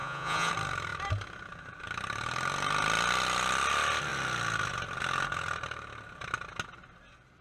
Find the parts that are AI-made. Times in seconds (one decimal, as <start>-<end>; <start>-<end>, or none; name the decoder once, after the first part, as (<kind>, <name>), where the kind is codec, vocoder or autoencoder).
0.0-0.5 (vocoder, Vocos)